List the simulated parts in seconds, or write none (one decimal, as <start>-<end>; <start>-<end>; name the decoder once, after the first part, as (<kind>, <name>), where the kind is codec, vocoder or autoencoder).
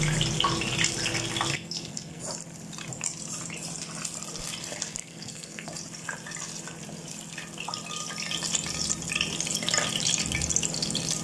1.5-2.2 (codec, SNAC); 5.0-5.7